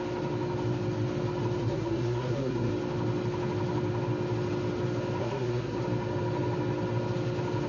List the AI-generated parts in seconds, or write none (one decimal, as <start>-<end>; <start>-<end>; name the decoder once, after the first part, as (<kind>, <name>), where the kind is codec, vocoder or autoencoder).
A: 1.6-2.7 (codec, SNAC); 5.2-5.8